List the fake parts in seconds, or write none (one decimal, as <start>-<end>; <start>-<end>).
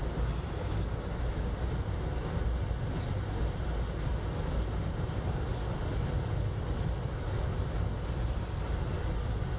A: none